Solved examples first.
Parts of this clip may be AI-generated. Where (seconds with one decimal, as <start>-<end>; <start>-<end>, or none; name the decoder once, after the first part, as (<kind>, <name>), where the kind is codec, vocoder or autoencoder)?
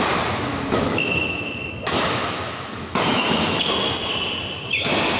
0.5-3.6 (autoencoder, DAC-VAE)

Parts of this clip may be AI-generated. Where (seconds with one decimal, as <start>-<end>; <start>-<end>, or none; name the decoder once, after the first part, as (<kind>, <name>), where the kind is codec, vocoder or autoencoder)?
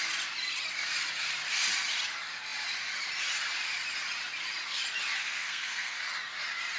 5.2-6.0 (codec, SNAC)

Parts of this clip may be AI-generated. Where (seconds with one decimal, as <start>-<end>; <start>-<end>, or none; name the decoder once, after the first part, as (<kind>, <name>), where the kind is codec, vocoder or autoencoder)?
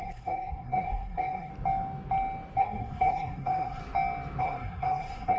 0.0-1.5 (codec, SNAC); 2.6-3.8; 4.4-5.4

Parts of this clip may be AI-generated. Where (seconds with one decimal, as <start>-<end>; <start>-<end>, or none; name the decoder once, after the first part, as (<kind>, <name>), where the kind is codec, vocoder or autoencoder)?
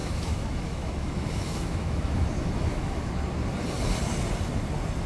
0.0-3.1 (autoencoder, DAC-VAE)